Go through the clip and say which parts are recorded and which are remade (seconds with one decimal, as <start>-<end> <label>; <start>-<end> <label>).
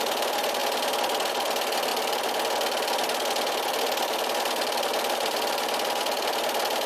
0.0-0.6 remade; 0.6-1.3 recorded; 1.3-1.9 remade; 1.9-3.8 recorded; 3.8-6.9 remade